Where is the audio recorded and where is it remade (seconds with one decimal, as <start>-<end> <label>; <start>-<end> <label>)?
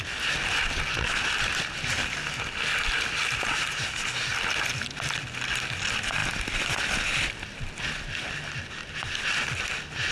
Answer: 0.0-10.1 recorded